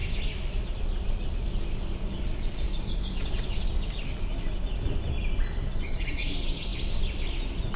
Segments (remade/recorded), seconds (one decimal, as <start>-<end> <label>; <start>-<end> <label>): 0.0-2.1 recorded; 2.1-3.7 remade; 3.7-5.7 recorded; 5.7-6.3 remade; 6.3-7.8 recorded